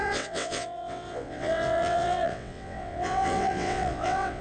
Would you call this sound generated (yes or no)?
yes